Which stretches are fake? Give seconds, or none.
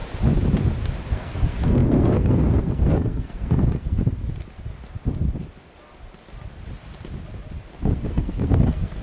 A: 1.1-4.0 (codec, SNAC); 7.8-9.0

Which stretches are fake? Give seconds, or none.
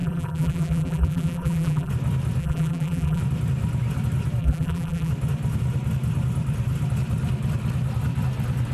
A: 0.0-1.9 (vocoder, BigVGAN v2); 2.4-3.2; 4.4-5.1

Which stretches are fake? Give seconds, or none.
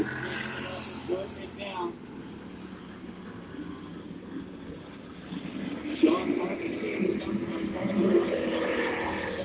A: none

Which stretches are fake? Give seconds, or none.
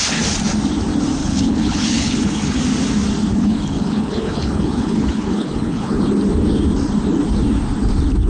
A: 1.2-2.6 (codec, HILCodec); 3.3-6.0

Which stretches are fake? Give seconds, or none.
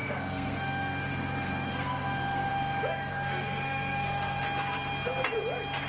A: 0.0-2.5 (codec, SNAC); 3.1-4.4